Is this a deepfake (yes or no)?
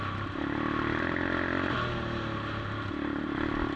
no